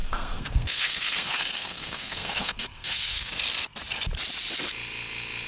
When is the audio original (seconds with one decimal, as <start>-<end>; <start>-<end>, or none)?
3.3-5.5